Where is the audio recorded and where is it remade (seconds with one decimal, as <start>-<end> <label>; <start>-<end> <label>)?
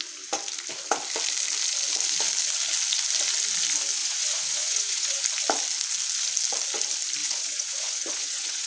0.0-4.0 recorded; 4.0-5.2 remade; 5.2-7.2 recorded; 7.2-8.7 remade